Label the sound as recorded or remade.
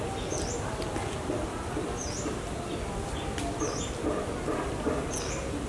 recorded